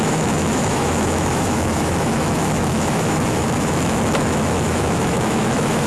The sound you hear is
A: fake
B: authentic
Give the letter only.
A